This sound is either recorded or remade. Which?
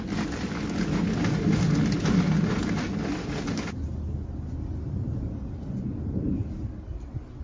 recorded